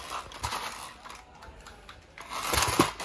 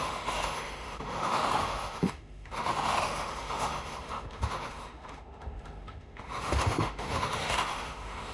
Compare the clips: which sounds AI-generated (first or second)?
second